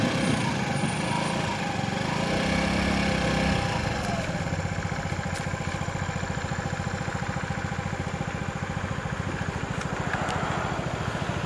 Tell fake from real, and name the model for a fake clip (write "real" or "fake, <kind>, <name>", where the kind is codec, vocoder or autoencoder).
real